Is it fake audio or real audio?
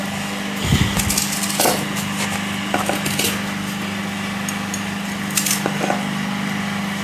real